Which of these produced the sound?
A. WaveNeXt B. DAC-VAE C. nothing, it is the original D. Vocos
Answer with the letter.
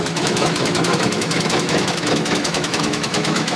B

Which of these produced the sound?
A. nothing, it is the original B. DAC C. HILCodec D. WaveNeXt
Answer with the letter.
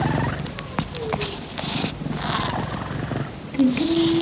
A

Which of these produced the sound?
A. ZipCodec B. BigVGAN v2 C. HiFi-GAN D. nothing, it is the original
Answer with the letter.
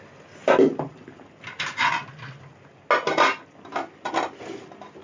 D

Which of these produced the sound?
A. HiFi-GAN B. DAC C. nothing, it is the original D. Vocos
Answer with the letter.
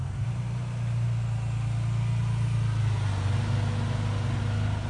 C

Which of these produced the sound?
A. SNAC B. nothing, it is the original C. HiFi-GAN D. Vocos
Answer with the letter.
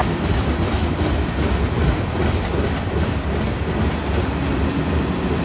B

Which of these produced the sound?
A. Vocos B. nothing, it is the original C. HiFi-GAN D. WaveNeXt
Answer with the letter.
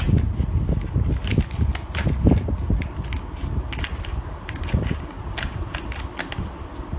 B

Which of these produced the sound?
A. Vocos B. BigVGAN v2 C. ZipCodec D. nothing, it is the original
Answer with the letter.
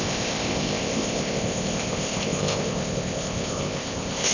C